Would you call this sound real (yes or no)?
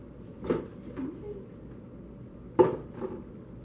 yes